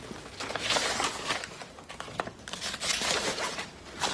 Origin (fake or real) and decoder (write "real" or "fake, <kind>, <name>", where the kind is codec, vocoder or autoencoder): real